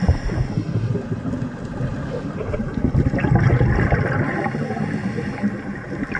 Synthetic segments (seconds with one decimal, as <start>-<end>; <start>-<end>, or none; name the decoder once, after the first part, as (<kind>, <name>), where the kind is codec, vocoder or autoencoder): 1.9-3.5 (vocoder, BigVGAN v2)